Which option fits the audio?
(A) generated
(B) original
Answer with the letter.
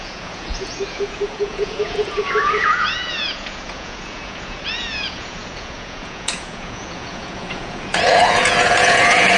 A